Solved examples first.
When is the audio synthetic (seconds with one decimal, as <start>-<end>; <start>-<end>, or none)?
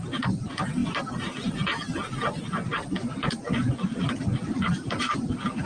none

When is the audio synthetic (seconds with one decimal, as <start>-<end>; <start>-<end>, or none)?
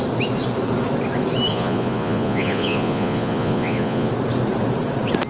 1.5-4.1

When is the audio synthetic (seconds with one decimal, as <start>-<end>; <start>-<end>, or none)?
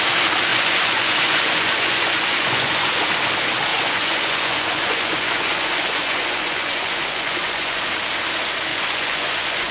0.5-2.9; 3.7-7.8; 8.7-9.7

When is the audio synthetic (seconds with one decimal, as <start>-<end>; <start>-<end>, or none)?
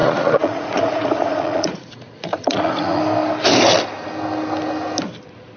0.0-3.0